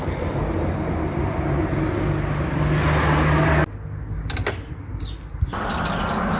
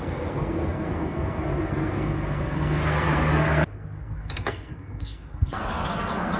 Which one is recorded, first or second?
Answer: first